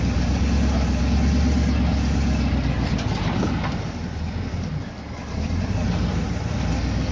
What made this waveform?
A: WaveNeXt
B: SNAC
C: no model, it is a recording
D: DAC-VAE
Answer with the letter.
C